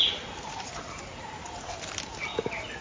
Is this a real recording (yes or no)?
yes